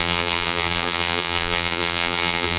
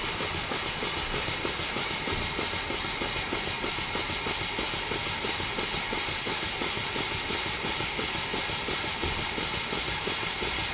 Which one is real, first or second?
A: second